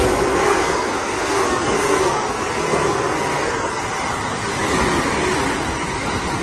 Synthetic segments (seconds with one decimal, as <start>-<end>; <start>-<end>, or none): 0.0-3.8